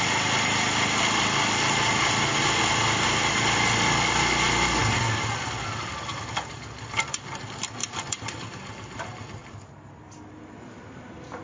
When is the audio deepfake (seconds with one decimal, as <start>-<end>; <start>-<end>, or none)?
9.4-11.4